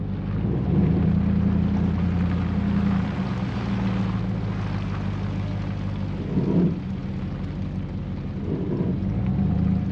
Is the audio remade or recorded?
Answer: recorded